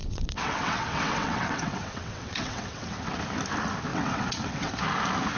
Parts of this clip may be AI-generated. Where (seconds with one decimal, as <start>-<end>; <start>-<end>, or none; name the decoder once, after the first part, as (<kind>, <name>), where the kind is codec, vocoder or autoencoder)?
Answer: 0.0-3.2 (vocoder, WaveNeXt); 3.9-4.7